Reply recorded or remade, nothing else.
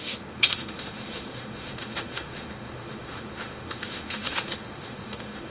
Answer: remade